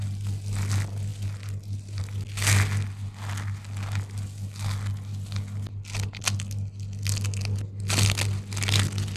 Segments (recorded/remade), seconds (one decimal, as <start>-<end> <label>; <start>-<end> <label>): 0.0-9.2 recorded